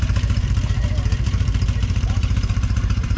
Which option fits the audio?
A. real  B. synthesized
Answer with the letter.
B